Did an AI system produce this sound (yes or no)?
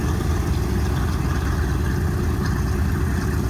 no